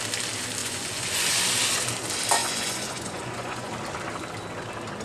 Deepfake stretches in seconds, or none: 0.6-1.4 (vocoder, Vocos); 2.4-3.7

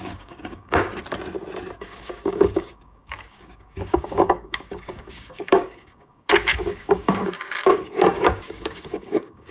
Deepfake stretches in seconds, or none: 0.0-1.0 (codec, DAC); 1.8-9.5

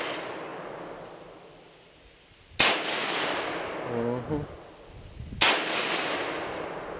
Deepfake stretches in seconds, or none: none

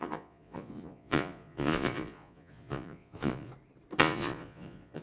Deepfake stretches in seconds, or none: 0.0-3.5 (vocoder, Vocos); 4.0-5.0

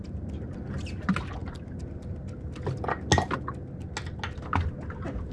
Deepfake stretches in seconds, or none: none

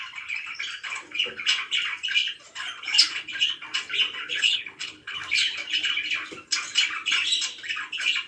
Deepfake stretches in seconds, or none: 4.3-5.2 (codec, HILCodec)